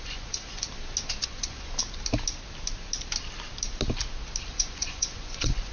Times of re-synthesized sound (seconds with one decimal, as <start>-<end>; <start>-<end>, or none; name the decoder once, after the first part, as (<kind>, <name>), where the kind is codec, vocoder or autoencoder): 0.0-0.7 (vocoder, Vocos); 1.2-1.8; 4.5-5.7

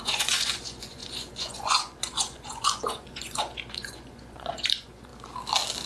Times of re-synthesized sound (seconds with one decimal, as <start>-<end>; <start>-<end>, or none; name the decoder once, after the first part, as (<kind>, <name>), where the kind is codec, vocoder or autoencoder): 0.0-5.1 (vocoder, Vocos)

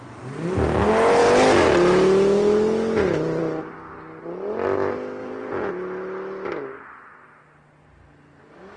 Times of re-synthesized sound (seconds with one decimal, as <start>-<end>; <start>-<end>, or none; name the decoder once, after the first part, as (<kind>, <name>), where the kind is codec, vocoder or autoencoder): 5.2-5.7 (vocoder, Vocos)

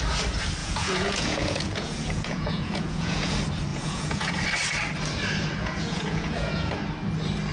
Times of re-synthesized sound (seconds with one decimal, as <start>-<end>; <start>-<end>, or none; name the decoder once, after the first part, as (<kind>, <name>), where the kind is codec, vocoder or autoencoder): 0.6-3.3 (vocoder, Vocos); 3.7-4.3; 5.6-6.7

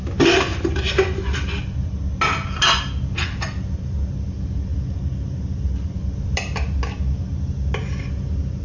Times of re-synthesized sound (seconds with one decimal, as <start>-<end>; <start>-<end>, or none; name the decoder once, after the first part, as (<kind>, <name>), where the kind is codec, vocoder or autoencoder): none

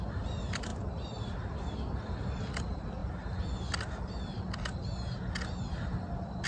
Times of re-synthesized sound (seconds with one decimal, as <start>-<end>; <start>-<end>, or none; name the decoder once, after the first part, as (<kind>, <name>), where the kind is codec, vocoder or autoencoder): none